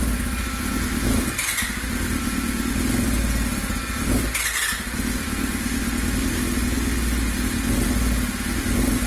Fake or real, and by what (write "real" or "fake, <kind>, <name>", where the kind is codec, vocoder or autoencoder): real